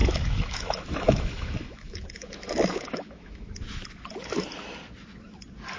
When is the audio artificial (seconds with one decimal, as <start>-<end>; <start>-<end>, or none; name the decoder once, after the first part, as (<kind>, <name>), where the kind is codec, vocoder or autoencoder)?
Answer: 0.0-3.5 (autoencoder, DAC-VAE)